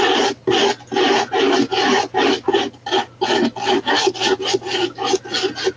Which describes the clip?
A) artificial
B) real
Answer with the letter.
B